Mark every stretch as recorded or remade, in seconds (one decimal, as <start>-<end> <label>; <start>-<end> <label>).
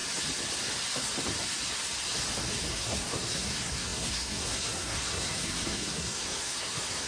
0.0-2.6 recorded; 2.6-7.1 remade